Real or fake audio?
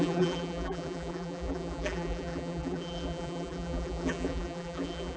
fake